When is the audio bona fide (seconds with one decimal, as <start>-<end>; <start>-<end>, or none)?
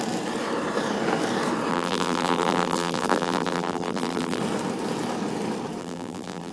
0.0-1.7; 4.4-5.8